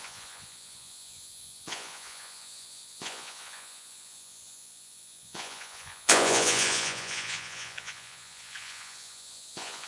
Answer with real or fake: fake